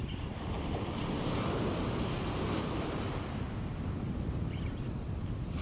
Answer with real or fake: real